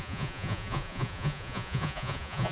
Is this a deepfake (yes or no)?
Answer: yes